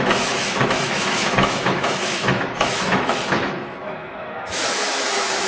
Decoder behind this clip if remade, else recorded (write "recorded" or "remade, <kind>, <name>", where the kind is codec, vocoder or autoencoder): remade, autoencoder, DAC-VAE